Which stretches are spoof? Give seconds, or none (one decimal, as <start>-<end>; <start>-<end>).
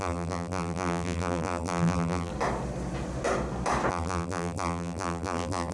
0.0-2.3; 3.9-5.7